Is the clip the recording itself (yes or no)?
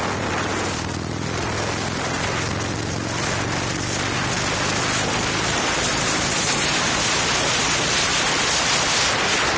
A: yes